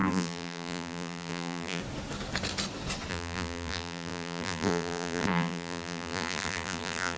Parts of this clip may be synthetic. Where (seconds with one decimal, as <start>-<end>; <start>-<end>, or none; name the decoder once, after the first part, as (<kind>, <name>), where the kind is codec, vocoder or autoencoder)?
0.0-1.8 (vocoder, BigVGAN v2); 3.1-7.2